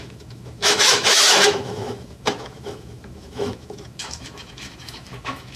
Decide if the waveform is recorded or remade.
remade